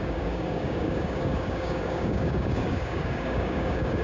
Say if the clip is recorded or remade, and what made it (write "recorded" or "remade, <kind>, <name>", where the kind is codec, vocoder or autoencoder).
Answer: remade, codec, DAC